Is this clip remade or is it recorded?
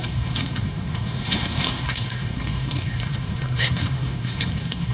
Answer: remade